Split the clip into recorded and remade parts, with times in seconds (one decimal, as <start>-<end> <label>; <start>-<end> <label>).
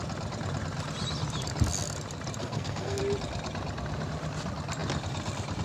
0.0-2.4 recorded; 2.4-3.0 remade; 3.0-5.6 recorded